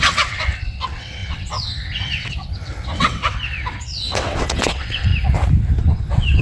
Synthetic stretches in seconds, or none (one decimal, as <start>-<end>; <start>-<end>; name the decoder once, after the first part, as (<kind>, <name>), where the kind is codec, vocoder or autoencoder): 0.0-5.1 (vocoder, WaveNeXt); 5.8-6.4